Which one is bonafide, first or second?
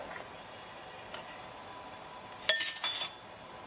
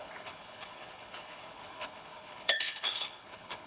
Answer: first